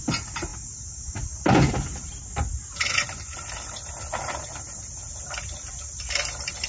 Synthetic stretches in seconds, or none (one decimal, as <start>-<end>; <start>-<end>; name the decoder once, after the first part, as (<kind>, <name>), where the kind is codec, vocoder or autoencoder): none